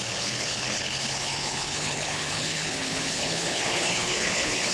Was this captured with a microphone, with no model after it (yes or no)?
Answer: no